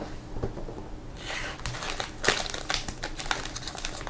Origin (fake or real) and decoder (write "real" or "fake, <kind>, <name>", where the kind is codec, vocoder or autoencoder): real